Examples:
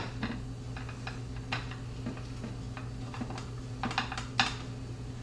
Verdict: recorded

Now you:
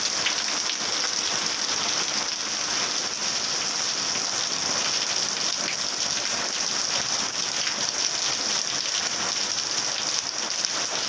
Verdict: recorded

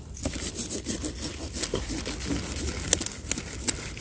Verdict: recorded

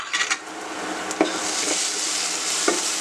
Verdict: recorded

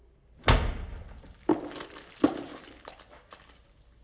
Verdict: recorded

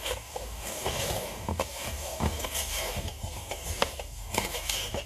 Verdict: remade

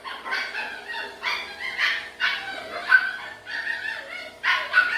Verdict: recorded